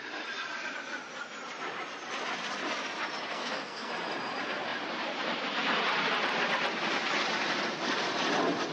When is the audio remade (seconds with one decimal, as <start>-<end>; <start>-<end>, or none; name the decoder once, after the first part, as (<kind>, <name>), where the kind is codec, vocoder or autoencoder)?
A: 3.3-3.9 (codec, SNAC)